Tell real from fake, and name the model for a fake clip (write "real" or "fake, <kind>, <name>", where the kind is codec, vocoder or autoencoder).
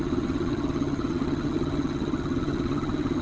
fake, vocoder, HiFi-GAN